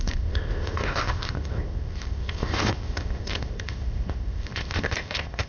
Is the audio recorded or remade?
remade